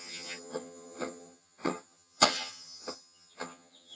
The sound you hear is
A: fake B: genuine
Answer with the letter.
A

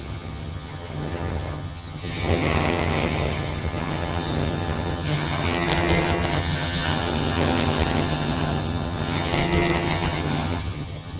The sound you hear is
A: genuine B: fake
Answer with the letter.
B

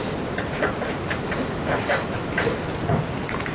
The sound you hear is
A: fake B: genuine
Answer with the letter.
B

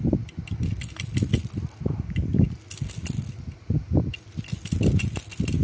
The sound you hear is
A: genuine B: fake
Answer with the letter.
A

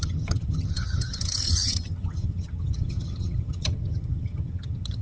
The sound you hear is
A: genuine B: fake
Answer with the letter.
B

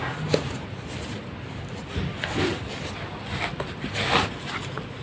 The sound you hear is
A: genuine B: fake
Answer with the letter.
A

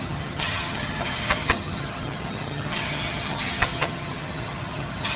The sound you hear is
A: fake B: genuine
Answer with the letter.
A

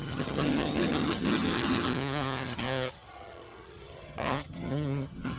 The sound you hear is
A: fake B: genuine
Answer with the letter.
A